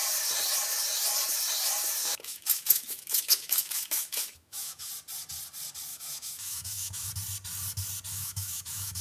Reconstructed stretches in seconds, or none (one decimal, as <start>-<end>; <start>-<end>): 2.0-4.9; 5.9-7.1; 8.1-9.0